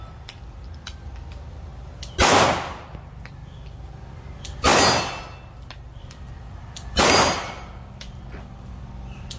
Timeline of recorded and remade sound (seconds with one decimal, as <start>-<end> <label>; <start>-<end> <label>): 0.0-1.7 remade; 1.7-3.3 recorded; 3.3-4.7 remade; 4.7-6.0 recorded; 6.0-9.4 remade